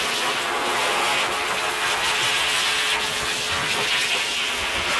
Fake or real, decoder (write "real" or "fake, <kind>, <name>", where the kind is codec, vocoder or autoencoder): real